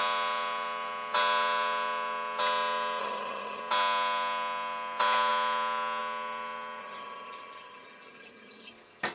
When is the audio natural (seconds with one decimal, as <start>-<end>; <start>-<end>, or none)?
0.0-3.0; 3.6-6.8; 8.7-9.1